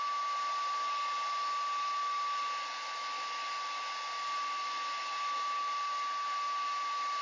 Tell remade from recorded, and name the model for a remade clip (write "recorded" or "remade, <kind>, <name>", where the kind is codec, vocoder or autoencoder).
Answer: recorded